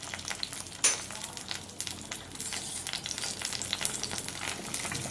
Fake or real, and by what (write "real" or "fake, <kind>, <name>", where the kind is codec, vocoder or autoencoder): real